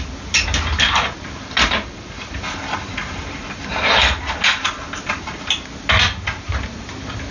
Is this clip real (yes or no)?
yes